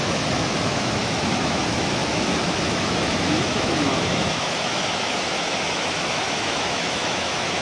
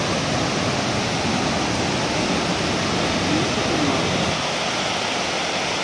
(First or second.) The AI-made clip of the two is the first